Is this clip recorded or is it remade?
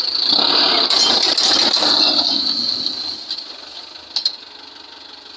recorded